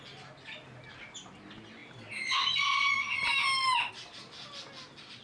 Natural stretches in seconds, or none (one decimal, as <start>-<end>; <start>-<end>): 0.0-5.2